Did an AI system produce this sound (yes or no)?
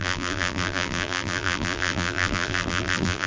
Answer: yes